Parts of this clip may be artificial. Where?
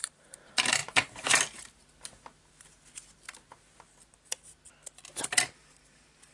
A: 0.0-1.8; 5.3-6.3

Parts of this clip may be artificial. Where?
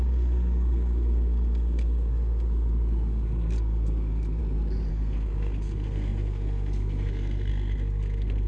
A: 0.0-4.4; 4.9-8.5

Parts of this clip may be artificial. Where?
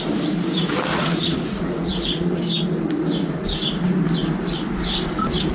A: 0.9-2.4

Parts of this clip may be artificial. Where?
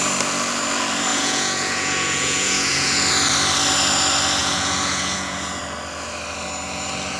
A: 1.1-3.1; 4.4-5.6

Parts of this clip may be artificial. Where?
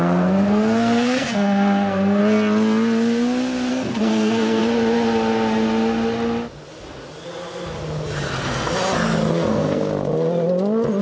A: 0.0-2.2; 3.7-4.6; 9.5-9.9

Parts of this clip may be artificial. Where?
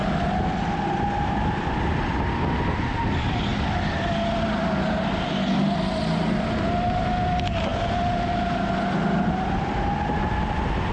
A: none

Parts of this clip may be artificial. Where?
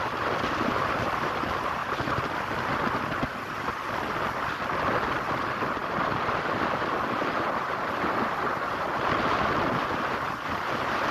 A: none